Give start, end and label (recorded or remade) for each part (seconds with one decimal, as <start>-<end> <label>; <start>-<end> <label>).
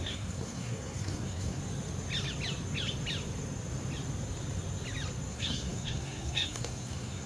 0.0-1.6 remade; 1.6-5.3 recorded; 5.3-7.3 remade